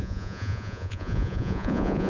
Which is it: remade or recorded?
remade